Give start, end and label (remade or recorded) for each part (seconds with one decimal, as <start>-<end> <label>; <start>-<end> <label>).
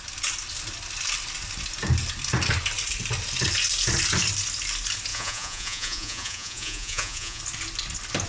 0.0-5.1 recorded; 5.1-7.4 remade; 7.4-8.3 recorded